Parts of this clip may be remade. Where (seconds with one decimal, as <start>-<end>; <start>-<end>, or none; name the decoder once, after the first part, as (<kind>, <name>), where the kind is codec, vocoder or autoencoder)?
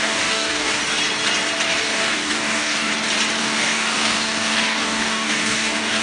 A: 0.0-0.8 (codec, DAC); 1.8-2.9; 3.4-6.0